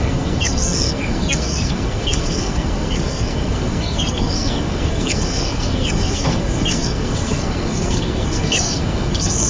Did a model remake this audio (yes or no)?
yes